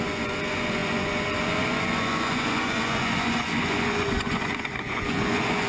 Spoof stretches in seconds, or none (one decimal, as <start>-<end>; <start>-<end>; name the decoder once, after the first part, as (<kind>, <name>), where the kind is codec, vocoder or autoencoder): 0.0-5.7 (vocoder, Vocos)